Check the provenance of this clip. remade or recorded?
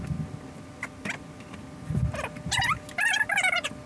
recorded